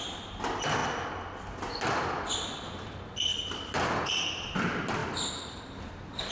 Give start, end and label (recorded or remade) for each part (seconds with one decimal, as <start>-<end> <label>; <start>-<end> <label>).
0.0-5.0 recorded; 5.0-5.6 remade; 5.6-6.3 recorded